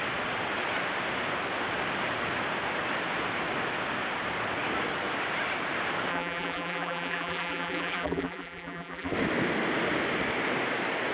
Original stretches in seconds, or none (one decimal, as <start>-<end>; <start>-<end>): 0.0-6.1; 9.1-11.1